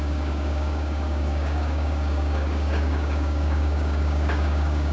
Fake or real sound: fake